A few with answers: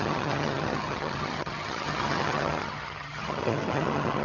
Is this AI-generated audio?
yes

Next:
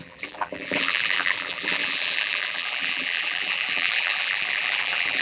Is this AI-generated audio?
yes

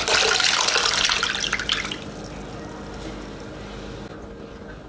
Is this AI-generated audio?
no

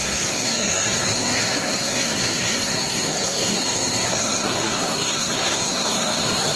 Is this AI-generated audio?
yes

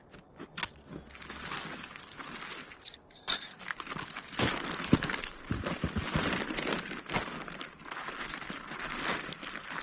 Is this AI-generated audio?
no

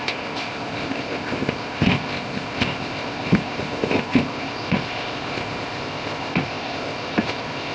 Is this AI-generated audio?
yes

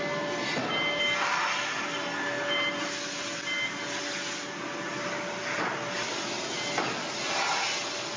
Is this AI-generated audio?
no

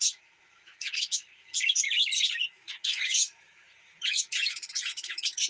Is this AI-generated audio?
yes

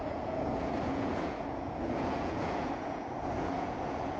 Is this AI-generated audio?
yes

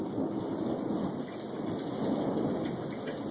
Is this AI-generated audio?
no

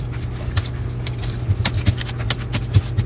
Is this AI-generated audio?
no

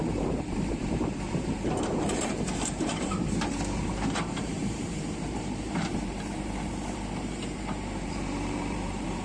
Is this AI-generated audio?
yes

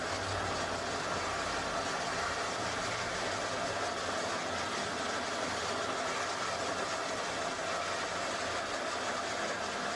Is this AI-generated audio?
no